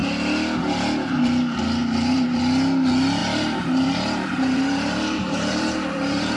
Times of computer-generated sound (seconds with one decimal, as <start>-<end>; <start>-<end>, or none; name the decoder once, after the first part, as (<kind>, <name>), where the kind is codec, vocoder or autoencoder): 1.8-2.4 (vocoder, BigVGAN v2); 3.2-6.4